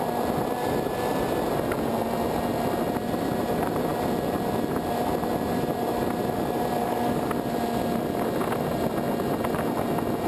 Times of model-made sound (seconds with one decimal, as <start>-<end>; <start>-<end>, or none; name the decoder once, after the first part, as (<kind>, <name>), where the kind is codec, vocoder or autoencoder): 6.8-7.3 (codec, DAC)